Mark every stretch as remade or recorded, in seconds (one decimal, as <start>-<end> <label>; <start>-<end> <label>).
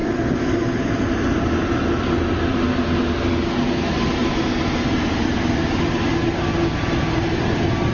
0.0-7.9 recorded